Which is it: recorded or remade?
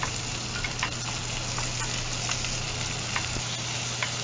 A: recorded